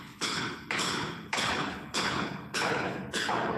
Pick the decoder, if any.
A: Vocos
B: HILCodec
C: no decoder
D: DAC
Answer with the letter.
B